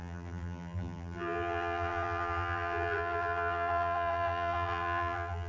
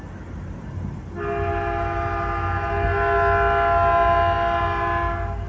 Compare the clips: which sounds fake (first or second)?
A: first